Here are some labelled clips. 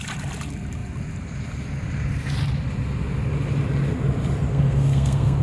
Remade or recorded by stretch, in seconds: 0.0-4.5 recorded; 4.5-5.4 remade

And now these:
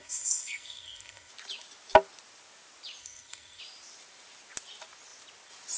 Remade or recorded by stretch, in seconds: 0.0-1.3 remade; 1.3-3.0 recorded; 3.0-3.6 remade; 3.6-5.8 recorded

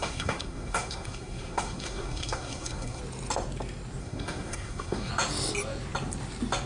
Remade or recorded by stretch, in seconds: 0.0-3.0 remade; 3.0-4.0 recorded; 4.0-5.1 remade; 5.1-6.7 recorded